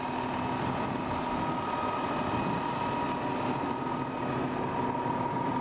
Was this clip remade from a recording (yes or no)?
no